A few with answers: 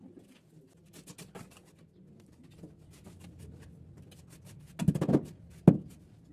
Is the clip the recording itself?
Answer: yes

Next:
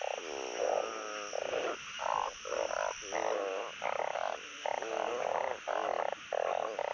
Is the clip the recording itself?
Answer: yes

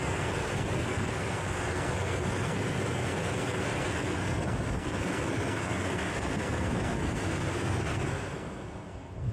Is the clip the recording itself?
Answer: no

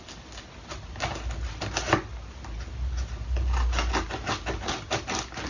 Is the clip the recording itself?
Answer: yes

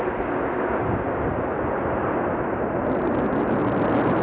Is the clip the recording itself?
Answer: yes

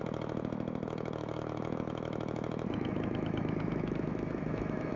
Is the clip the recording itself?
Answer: no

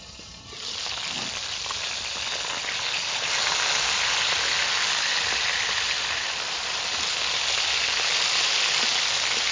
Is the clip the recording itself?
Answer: yes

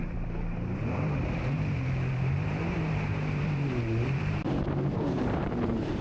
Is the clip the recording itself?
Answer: no